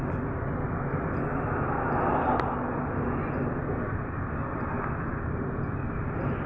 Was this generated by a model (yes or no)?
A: no